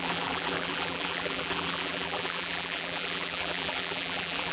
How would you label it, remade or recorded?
remade